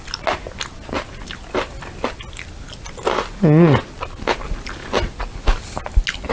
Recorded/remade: recorded